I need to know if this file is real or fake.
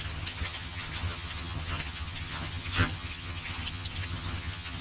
fake